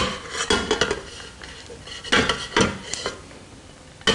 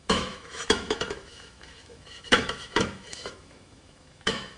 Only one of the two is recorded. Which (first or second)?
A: first